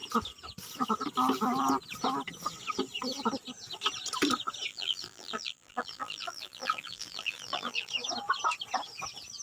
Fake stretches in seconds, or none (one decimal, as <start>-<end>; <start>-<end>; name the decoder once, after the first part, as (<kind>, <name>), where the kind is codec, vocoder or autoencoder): 4.7-7.9 (vocoder, BigVGAN v2)